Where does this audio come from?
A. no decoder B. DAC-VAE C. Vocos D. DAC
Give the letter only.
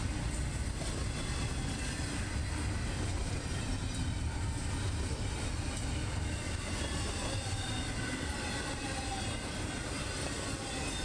A